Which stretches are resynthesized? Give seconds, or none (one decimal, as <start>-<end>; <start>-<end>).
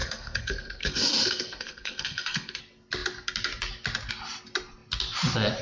0.0-2.6